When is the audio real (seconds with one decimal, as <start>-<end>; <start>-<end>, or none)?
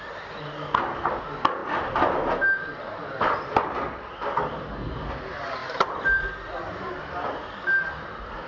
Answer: 0.0-8.5